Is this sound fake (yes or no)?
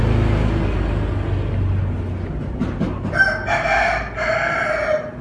no